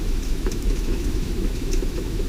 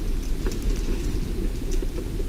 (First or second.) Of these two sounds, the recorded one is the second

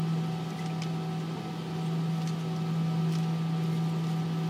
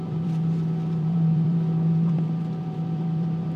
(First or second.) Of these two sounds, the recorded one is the first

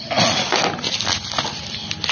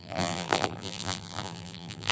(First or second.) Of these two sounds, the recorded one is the first